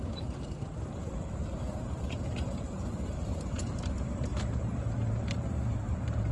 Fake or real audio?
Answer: fake